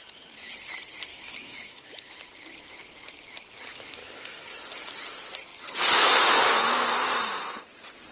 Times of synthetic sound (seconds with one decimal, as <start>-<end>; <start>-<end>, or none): 1.1-2.0; 4.0-4.5